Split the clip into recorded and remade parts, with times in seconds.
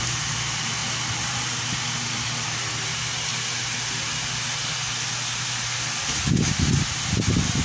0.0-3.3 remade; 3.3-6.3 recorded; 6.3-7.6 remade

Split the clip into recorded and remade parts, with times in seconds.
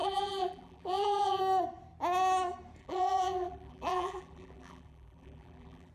0.0-1.4 remade; 1.4-2.8 recorded; 2.8-5.9 remade